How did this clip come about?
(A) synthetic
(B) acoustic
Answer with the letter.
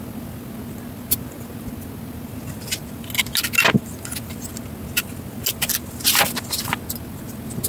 B